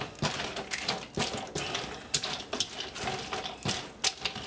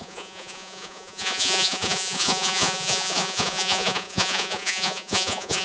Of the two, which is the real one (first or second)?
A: first